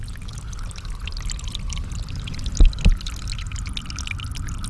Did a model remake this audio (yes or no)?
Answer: no